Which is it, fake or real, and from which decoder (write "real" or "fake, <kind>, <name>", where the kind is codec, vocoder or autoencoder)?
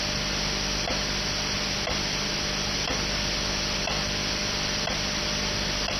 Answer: real